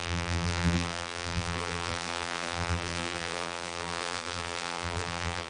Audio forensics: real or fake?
fake